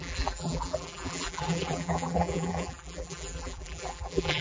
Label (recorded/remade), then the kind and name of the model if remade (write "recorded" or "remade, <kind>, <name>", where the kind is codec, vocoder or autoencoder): remade, vocoder, BigVGAN v2